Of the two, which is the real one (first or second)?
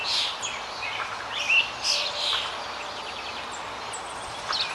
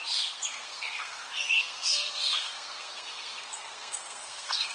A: first